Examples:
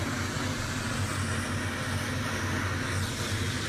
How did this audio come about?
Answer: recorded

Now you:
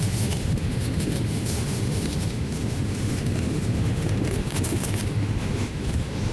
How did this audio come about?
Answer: remade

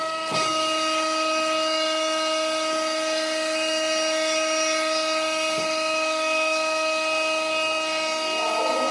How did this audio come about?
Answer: remade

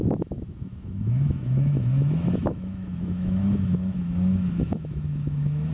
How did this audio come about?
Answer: remade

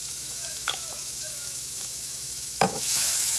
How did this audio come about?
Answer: remade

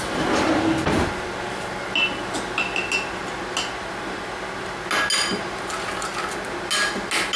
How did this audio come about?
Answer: recorded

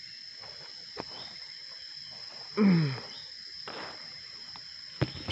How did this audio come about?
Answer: recorded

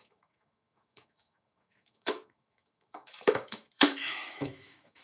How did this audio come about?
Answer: remade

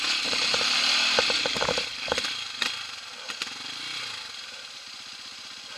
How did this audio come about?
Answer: recorded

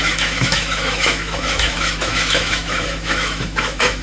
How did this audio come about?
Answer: remade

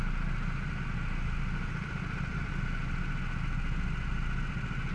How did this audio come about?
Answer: recorded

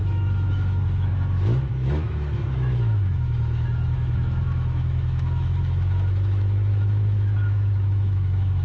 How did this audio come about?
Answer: remade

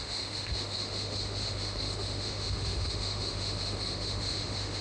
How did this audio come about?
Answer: remade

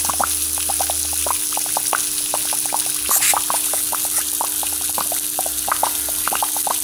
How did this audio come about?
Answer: recorded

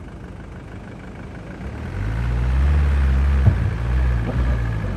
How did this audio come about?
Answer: recorded